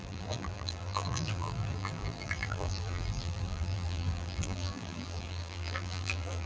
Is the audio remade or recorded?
remade